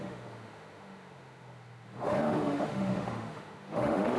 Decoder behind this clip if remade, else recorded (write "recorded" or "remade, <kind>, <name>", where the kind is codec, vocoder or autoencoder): remade, autoencoder, DAC-VAE